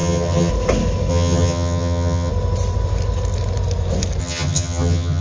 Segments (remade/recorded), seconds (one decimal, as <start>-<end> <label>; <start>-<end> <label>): 0.0-0.5 remade; 0.5-1.1 recorded; 1.1-2.3 remade; 2.3-4.2 recorded; 4.2-5.2 remade